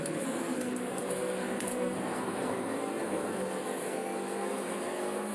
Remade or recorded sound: remade